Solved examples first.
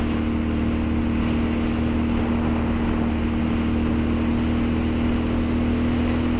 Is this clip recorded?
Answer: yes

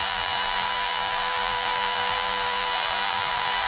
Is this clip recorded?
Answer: no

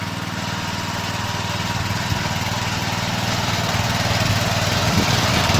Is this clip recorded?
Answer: yes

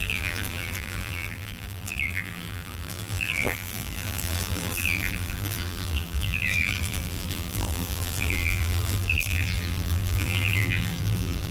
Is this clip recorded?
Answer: no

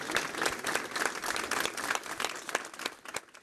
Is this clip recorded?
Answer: yes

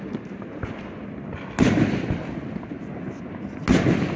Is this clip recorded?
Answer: yes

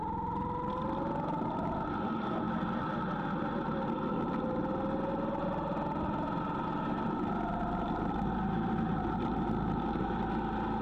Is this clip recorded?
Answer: yes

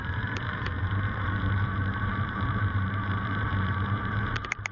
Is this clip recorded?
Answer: no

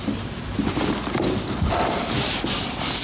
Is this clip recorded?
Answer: yes